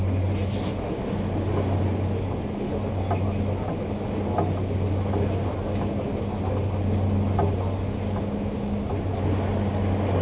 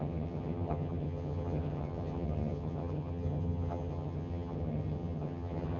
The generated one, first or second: second